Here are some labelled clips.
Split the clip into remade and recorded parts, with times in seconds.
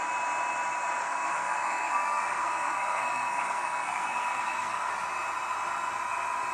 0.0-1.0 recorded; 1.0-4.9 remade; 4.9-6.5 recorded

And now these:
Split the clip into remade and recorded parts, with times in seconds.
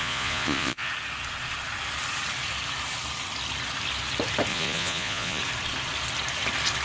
0.0-0.9 remade; 0.9-4.5 recorded; 4.5-5.4 remade; 5.4-6.8 recorded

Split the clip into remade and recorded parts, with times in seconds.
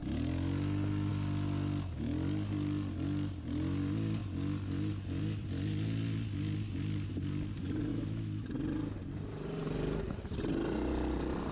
0.0-7.9 recorded; 7.9-8.5 remade; 8.5-11.5 recorded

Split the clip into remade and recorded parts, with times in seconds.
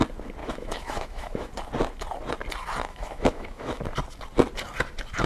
0.0-0.4 recorded; 0.4-1.5 remade; 1.5-2.9 recorded; 2.9-3.8 remade; 3.8-5.3 recorded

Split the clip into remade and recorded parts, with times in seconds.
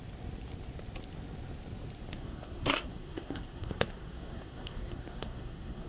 0.0-2.2 recorded; 2.2-5.9 remade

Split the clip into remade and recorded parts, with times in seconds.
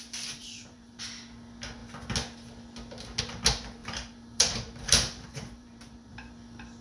0.0-0.4 recorded; 0.4-1.0 remade; 1.0-3.8 recorded; 3.8-6.3 remade; 6.3-6.8 recorded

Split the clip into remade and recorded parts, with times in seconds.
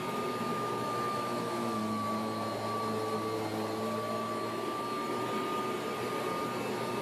0.0-0.5 recorded; 0.5-1.8 remade; 1.8-7.0 recorded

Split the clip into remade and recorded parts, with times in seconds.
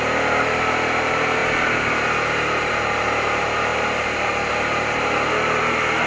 0.0-6.1 recorded